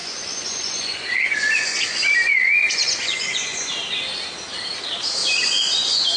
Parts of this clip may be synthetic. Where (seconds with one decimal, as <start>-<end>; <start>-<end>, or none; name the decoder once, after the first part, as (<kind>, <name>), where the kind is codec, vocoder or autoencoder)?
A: 0.0-3.7 (vocoder, Vocos); 5.2-6.2